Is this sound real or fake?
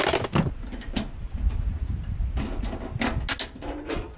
real